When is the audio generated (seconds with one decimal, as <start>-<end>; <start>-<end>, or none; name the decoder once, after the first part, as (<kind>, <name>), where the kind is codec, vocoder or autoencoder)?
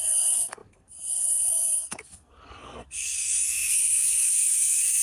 0.0-5.0 (codec, SNAC)